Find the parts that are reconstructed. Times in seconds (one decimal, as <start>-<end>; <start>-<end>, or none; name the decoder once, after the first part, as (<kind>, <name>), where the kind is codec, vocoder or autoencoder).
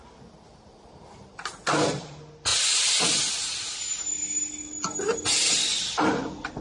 none